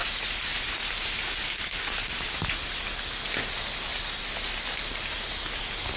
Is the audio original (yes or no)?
yes